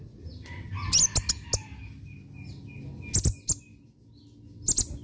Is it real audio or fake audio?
real